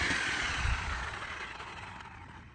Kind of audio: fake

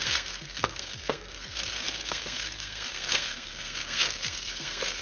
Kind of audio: fake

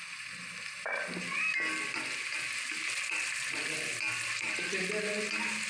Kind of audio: real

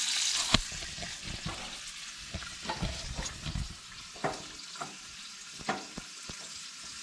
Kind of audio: real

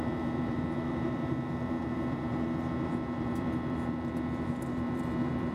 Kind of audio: fake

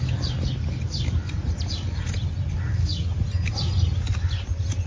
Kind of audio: real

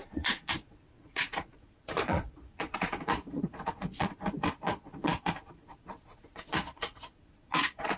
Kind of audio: fake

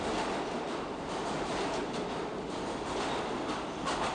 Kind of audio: real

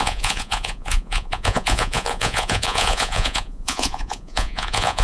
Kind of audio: fake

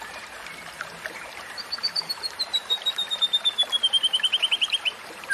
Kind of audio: fake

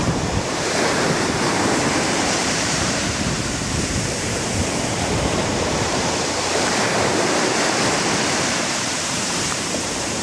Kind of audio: fake